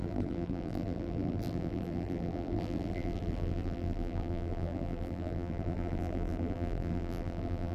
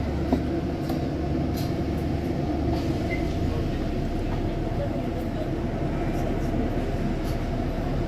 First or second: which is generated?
first